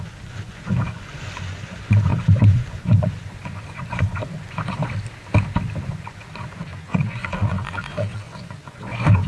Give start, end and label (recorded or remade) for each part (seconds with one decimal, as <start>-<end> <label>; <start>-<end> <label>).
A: 0.0-4.8 remade; 4.8-5.8 recorded; 5.8-9.3 remade